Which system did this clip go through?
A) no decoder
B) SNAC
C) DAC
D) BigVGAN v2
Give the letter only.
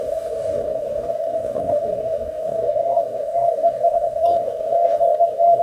C